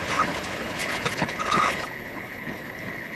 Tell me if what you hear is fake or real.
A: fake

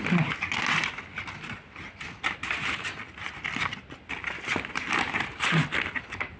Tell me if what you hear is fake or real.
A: real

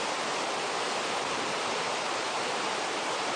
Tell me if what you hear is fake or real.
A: fake